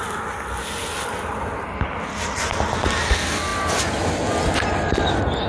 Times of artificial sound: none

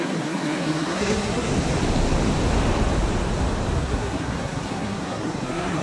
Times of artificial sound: 0.0-1.5; 3.8-5.8

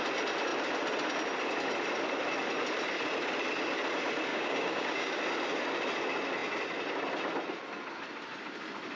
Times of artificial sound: 4.3-5.2

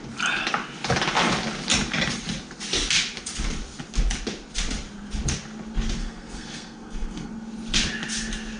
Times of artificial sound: 6.0-7.3

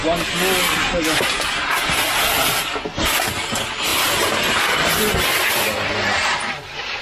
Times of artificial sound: none

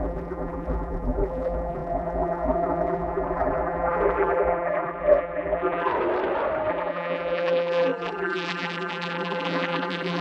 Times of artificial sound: 0.0-5.9; 6.7-10.2

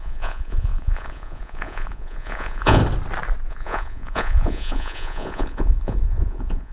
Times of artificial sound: 0.0-2.8; 3.5-6.7